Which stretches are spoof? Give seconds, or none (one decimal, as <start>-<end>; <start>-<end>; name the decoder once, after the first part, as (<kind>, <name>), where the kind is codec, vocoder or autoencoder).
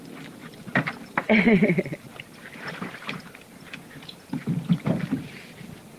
none